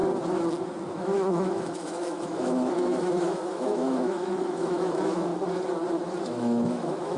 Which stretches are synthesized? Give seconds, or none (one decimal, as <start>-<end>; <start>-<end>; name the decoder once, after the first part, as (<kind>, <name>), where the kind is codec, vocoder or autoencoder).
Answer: 0.9-5.3 (autoencoder, DAC-VAE); 6.2-7.2